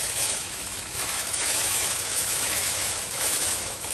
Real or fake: fake